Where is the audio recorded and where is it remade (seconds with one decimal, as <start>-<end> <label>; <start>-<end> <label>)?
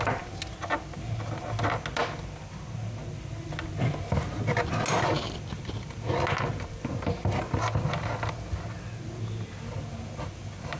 0.0-10.8 recorded